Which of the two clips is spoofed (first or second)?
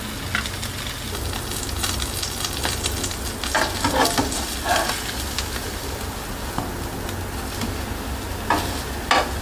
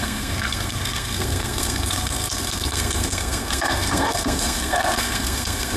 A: second